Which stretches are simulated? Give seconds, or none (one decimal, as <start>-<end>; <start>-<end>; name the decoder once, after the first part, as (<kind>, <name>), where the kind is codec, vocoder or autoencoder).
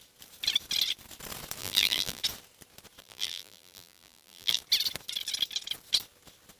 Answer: 1.6-2.2 (vocoder, BigVGAN v2); 3.0-4.6